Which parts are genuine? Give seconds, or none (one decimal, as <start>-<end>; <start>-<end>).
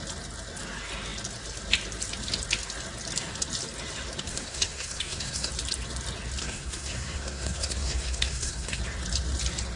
0.0-4.3; 5.5-6.4; 8.8-9.8